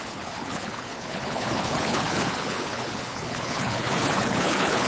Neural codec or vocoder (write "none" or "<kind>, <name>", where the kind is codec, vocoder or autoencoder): codec, HILCodec